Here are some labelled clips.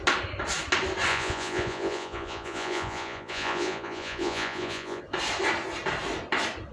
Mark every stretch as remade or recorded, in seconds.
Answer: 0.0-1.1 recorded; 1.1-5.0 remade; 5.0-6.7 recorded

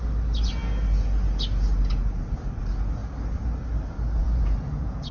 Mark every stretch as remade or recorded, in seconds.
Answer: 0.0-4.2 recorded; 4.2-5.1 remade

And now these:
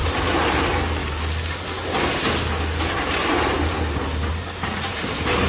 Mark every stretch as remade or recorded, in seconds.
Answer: 0.0-5.5 recorded

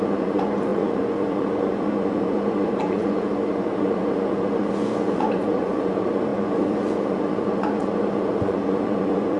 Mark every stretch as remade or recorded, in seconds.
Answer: 0.0-9.4 remade